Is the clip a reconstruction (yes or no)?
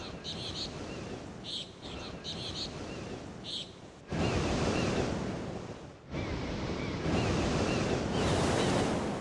no